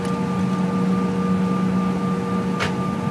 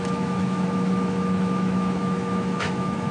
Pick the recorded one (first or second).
first